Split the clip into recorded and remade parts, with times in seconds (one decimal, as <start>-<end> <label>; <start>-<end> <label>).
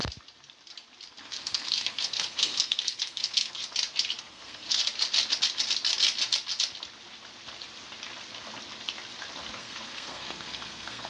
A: 0.0-1.2 recorded; 1.2-3.6 remade; 3.6-4.2 recorded; 4.2-4.8 remade; 4.8-9.6 recorded; 9.6-11.1 remade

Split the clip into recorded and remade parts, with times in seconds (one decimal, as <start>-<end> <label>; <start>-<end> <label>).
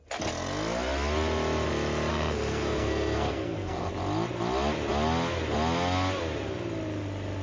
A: 0.0-2.1 recorded; 2.1-3.9 remade; 3.9-7.4 recorded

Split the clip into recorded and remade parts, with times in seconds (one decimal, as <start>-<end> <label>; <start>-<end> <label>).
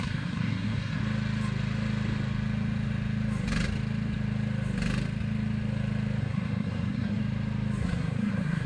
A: 0.0-1.0 remade; 1.0-6.2 recorded; 6.2-7.2 remade; 7.2-7.8 recorded; 7.8-8.7 remade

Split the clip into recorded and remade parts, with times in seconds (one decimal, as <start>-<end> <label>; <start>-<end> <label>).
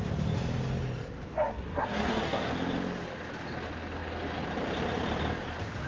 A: 0.0-1.5 recorded; 1.5-2.5 remade; 2.5-5.9 recorded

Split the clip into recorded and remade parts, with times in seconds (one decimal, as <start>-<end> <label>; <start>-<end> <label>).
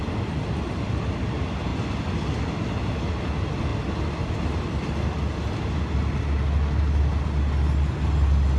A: 0.0-8.6 recorded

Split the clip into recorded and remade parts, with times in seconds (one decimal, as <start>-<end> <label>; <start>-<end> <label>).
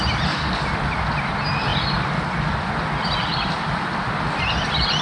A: 0.0-5.0 recorded